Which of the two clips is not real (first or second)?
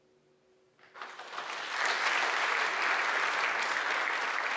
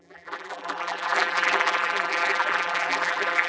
second